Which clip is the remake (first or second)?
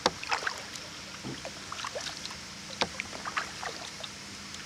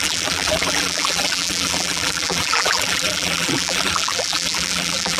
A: second